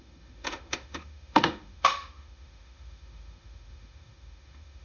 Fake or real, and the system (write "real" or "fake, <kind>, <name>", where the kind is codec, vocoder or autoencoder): fake, autoencoder, DAC-VAE